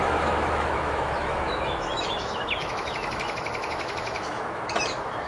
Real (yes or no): no